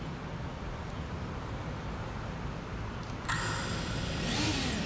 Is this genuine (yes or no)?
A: yes